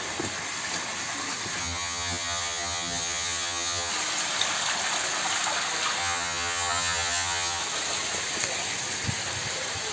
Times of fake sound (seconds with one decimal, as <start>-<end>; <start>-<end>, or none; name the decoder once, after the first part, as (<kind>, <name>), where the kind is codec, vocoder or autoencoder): 1.6-3.9 (vocoder, HiFi-GAN); 6.0-7.6